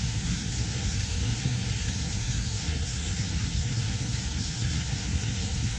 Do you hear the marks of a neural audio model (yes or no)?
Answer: yes